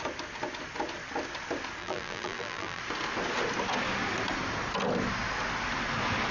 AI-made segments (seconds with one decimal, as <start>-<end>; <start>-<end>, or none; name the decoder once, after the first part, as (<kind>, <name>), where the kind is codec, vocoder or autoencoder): 1.8-2.8 (vocoder, BigVGAN v2)